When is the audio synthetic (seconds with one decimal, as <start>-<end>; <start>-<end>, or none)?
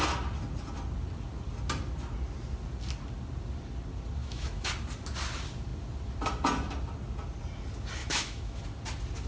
4.2-4.7; 8.0-8.6